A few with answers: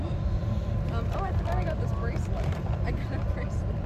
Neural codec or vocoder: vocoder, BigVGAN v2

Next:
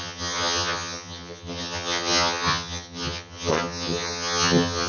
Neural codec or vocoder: vocoder, HiFi-GAN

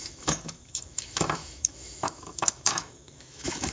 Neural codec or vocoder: autoencoder, DAC-VAE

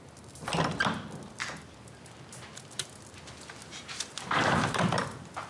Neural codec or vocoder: vocoder, BigVGAN v2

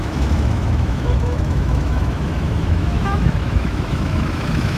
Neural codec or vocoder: autoencoder, DAC-VAE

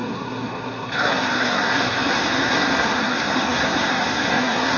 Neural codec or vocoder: codec, SNAC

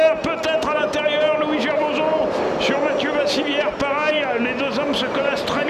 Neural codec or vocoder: none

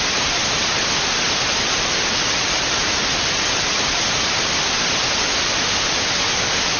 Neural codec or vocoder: none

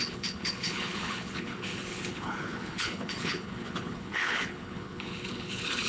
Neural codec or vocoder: codec, HILCodec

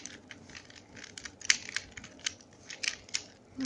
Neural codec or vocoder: none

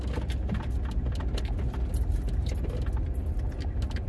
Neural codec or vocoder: none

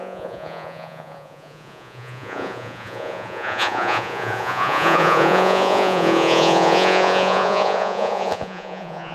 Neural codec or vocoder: vocoder, Vocos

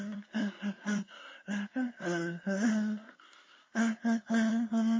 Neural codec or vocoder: codec, SNAC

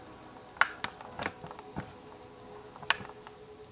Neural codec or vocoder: none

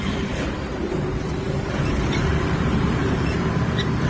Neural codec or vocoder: vocoder, BigVGAN v2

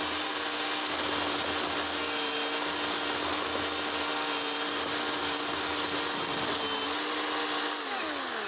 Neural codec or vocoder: none